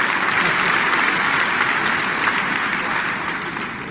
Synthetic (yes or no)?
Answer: no